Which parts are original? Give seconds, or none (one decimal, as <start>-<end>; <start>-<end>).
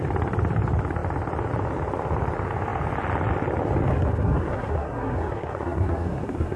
0.0-3.9